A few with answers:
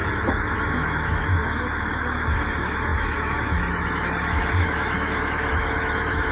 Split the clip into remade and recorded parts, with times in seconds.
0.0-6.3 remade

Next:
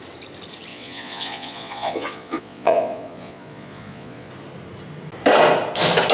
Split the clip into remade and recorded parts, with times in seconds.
0.0-0.7 recorded; 0.7-4.3 remade; 4.3-6.1 recorded

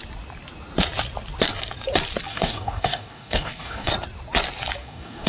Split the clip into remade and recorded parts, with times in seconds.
0.0-2.3 recorded; 2.3-3.9 remade; 3.9-4.8 recorded; 4.8-5.3 remade

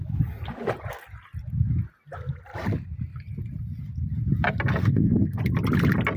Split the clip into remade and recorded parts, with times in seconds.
0.0-4.8 recorded; 4.8-5.4 remade; 5.4-6.2 recorded

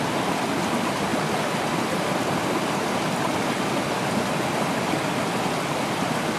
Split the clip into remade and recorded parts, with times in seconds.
0.0-6.4 recorded